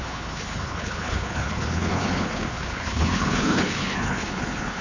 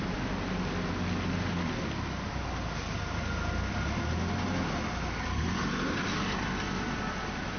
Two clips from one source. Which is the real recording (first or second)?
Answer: second